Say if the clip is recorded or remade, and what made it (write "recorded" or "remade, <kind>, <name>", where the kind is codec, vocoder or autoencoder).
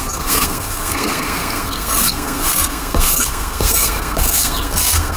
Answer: remade, codec, SNAC